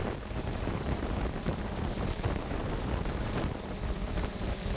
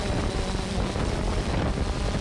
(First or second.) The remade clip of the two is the first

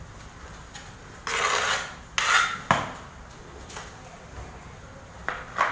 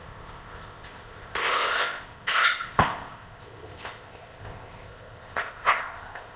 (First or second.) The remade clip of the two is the second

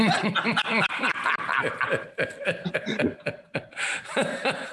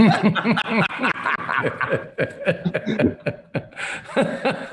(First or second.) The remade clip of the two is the first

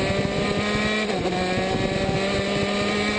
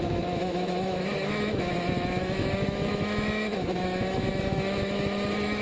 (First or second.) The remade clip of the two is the second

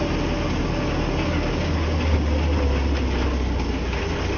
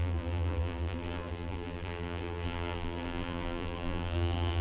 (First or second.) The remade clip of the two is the second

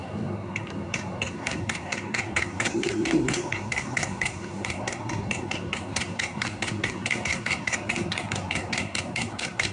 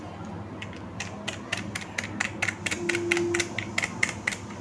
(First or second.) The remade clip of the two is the first